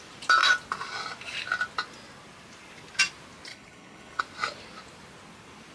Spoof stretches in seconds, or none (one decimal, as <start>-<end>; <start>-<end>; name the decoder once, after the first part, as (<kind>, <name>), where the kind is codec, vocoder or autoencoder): 3.5-4.2 (codec, HILCodec)